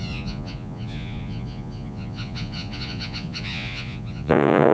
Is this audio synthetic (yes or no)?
yes